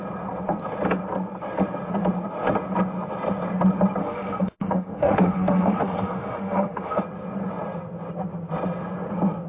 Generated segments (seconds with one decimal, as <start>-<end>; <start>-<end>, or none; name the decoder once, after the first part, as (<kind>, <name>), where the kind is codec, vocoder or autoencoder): 4.0-7.0 (autoencoder, DAC-VAE)